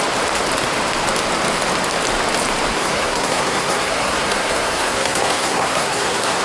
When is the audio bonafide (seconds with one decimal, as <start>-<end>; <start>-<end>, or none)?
0.0-2.7